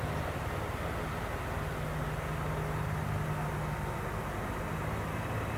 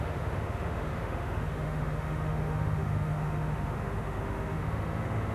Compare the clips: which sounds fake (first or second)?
second